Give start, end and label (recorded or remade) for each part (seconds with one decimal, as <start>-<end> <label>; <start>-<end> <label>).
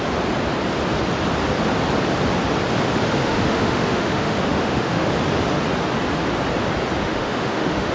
0.0-3.2 recorded; 3.2-5.1 remade; 5.1-7.0 recorded; 7.0-7.9 remade